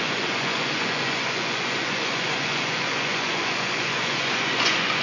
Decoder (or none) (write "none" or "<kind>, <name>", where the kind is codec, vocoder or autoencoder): vocoder, Vocos